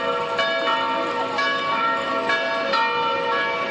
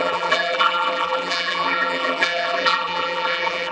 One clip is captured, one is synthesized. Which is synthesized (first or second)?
second